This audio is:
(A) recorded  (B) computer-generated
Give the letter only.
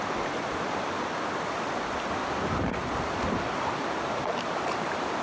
A